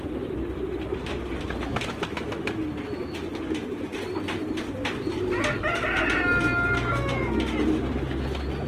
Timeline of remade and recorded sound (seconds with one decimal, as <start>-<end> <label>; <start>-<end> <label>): 0.0-1.7 recorded; 1.7-2.5 remade; 2.5-8.7 recorded